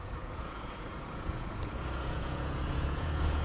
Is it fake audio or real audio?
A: fake